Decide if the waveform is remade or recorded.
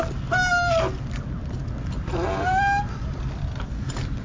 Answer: recorded